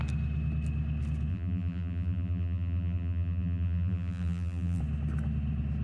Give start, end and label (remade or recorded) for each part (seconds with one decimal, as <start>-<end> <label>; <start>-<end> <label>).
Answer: 0.0-1.3 recorded; 1.3-4.8 remade; 4.8-5.8 recorded